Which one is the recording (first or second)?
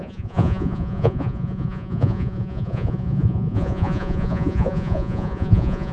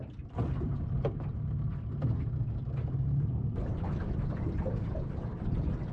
second